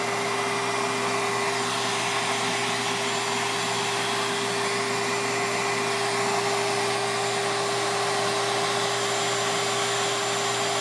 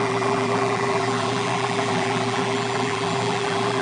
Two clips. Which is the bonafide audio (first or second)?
first